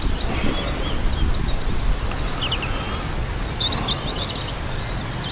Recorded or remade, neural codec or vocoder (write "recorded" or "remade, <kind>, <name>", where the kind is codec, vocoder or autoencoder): recorded